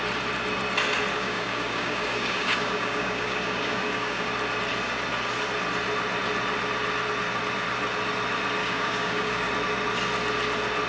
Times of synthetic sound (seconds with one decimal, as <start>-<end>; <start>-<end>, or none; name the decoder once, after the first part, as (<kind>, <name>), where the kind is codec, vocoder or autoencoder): 1.1-4.3 (codec, DAC); 8.6-9.5